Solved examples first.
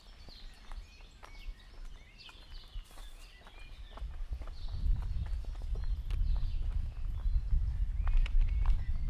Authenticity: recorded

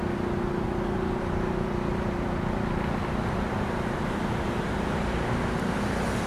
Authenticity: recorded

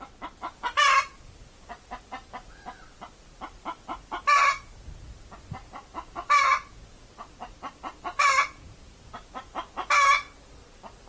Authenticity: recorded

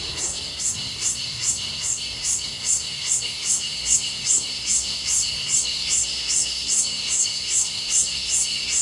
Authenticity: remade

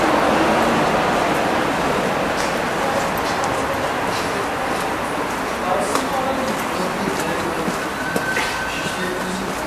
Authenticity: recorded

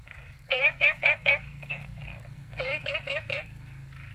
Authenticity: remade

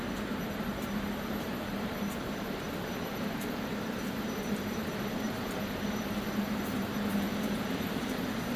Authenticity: remade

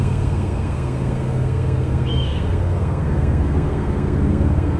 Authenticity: remade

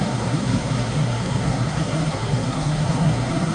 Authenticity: remade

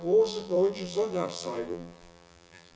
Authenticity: remade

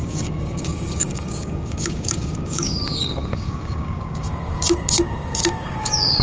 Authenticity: remade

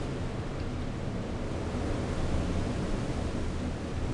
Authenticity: recorded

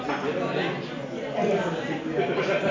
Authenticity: recorded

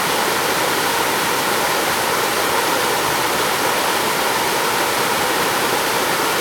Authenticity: recorded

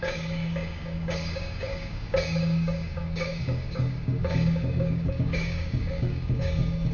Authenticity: remade